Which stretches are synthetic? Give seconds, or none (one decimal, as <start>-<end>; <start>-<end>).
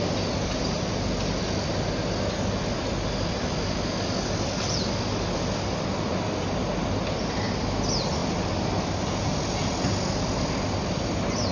none